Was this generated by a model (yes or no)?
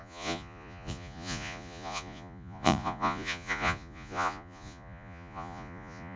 yes